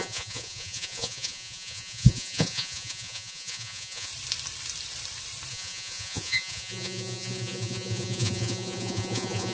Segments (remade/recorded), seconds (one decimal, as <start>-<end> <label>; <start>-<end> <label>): 0.0-4.1 remade; 4.1-5.5 recorded; 5.5-9.5 remade

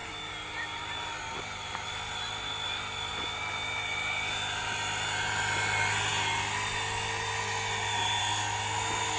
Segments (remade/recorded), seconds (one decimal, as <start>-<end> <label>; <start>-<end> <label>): 0.0-9.2 recorded

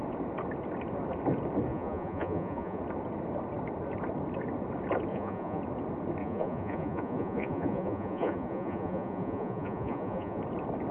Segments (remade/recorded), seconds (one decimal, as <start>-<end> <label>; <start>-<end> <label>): 0.0-1.7 recorded; 1.7-2.8 remade; 2.8-5.1 recorded; 5.1-5.6 remade; 5.6-6.2 recorded; 6.2-10.4 remade; 10.4-10.9 recorded